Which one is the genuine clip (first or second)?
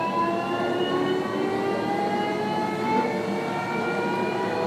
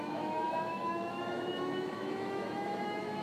first